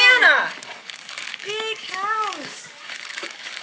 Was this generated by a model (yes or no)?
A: yes